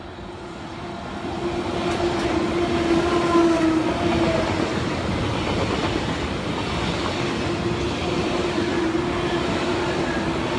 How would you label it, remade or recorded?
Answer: recorded